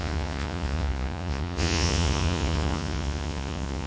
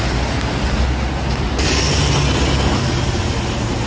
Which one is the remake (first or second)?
first